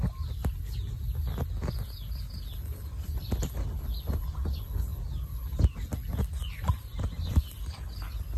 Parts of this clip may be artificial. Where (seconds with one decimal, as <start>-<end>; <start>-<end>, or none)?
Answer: none